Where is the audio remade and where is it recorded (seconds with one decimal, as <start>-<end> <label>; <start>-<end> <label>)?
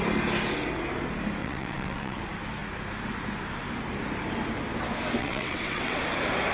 0.0-1.4 recorded; 1.4-2.2 remade; 2.2-5.2 recorded; 5.2-6.0 remade; 6.0-6.5 recorded